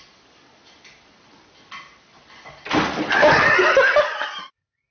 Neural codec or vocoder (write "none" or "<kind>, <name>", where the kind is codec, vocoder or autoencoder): none